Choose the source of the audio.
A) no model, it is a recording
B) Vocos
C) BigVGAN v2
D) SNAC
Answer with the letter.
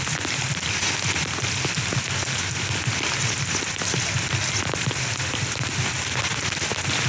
A